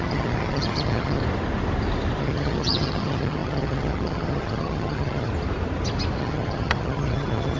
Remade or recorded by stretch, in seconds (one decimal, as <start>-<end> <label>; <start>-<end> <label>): 0.0-1.2 remade; 1.2-2.2 recorded; 2.2-5.3 remade; 5.3-6.2 recorded; 6.2-7.6 remade